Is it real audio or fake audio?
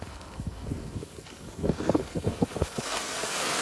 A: fake